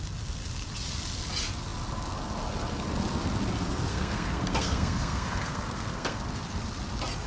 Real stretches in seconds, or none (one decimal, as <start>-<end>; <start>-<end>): 0.0-3.9; 6.2-7.3

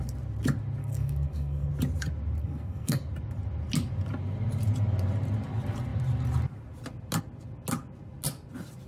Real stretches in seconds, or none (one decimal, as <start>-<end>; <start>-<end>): 0.0-0.8; 1.7-2.4; 3.0-8.9

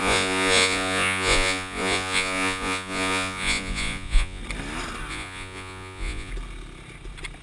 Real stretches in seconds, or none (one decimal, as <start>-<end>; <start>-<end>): 4.4-5.1; 6.3-7.4

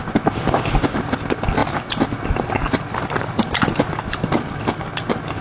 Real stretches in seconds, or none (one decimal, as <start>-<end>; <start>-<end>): 0.0-5.4

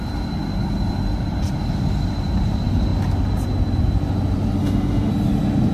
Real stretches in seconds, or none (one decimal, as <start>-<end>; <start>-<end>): 0.0-4.6; 5.1-5.7

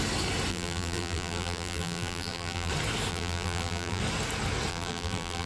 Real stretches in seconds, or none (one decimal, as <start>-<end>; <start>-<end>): 0.0-0.5; 2.7-3.1; 4.0-4.7

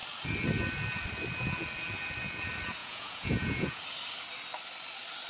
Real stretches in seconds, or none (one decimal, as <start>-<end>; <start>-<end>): 0.0-2.8; 3.8-5.3